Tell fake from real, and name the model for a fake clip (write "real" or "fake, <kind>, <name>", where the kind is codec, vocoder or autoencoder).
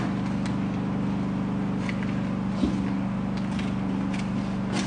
real